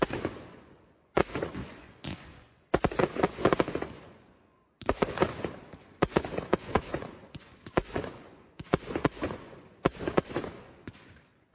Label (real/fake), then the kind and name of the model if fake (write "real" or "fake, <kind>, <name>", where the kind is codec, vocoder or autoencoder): fake, vocoder, Vocos